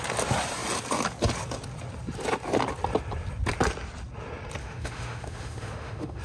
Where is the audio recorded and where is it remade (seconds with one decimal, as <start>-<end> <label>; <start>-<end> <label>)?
0.0-4.6 recorded; 4.6-6.2 remade